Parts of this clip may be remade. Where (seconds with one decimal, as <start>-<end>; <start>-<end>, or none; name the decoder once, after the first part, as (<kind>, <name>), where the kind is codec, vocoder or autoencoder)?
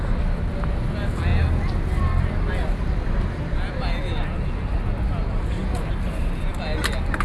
none